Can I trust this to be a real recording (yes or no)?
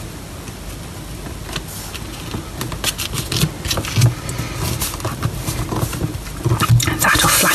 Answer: yes